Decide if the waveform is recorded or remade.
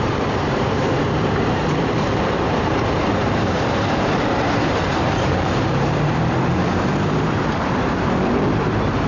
remade